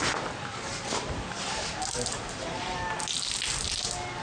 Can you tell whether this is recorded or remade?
recorded